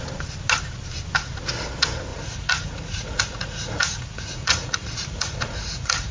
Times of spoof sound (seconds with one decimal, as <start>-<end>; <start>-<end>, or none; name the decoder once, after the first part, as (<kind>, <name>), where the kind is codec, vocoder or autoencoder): 2.1-6.1 (vocoder, Vocos)

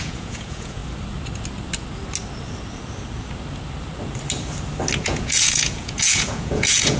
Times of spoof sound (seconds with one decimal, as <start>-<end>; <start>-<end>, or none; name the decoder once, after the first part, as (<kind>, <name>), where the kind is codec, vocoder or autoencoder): 0.0-0.8 (vocoder, Vocos); 5.0-7.0

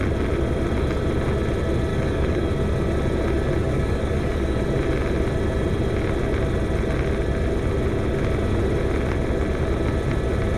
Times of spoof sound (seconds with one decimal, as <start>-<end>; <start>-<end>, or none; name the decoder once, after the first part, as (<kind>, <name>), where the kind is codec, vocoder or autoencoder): 1.9-2.5 (codec, DAC); 3.6-4.6

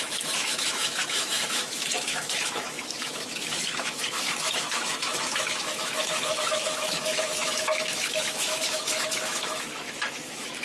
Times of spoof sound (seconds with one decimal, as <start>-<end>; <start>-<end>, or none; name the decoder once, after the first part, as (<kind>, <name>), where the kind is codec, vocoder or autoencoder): 0.0-10.6 (autoencoder, DAC-VAE)

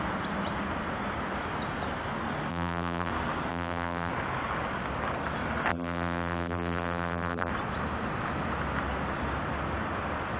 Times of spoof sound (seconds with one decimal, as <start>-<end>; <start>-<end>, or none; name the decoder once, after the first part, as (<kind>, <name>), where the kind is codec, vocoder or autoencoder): 2.5-3.1 (vocoder, BigVGAN v2); 3.5-4.1; 5.7-7.5

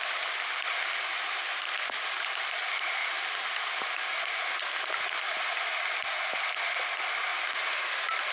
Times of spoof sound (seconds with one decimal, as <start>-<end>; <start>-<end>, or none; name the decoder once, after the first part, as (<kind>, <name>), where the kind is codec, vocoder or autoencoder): 7.3-8.3 (vocoder, BigVGAN v2)

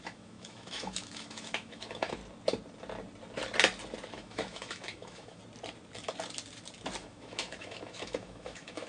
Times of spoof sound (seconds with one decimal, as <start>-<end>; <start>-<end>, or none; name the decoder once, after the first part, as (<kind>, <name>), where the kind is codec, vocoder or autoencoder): 0.0-2.2 (autoencoder, DAC-VAE); 4.1-5.4; 7.0-8.9